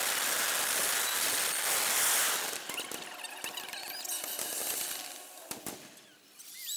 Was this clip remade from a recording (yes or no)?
no